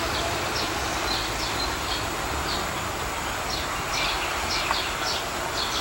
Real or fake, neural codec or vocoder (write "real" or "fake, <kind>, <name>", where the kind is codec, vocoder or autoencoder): real